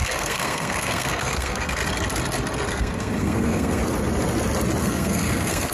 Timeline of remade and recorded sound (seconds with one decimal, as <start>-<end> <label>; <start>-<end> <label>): 0.0-1.8 remade; 1.8-2.7 recorded; 2.7-3.8 remade; 3.8-4.8 recorded; 4.8-5.7 remade

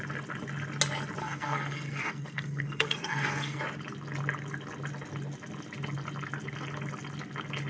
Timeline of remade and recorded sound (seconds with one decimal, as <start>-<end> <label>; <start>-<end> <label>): 0.0-1.2 recorded; 1.2-3.6 remade; 3.6-7.7 recorded

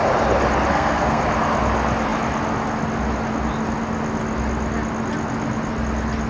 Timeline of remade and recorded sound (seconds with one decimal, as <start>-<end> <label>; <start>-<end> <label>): 0.0-0.7 recorded; 0.7-1.2 remade; 1.2-6.3 recorded

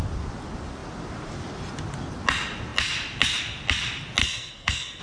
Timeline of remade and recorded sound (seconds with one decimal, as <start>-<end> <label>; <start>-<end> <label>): 0.0-4.2 recorded; 4.2-5.0 remade

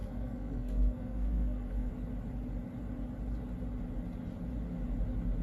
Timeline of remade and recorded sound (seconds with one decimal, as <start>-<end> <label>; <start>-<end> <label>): 0.0-1.9 remade; 1.9-5.4 recorded